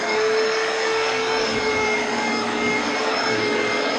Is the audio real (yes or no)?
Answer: no